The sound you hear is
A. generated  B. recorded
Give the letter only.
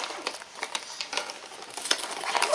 A